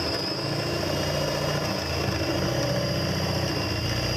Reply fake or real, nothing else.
real